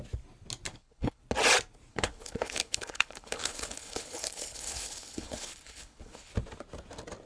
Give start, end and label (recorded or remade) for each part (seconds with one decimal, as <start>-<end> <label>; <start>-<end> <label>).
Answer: 0.0-0.7 recorded; 0.7-1.2 remade; 1.2-1.9 recorded; 1.9-6.3 remade; 6.3-7.3 recorded